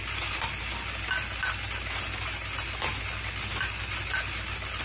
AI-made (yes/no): no